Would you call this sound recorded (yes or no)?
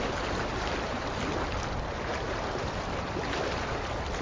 yes